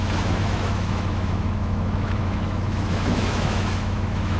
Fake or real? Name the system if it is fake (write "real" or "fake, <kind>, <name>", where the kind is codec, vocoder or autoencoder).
fake, autoencoder, DAC-VAE